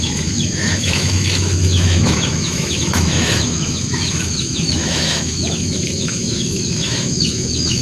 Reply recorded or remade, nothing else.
remade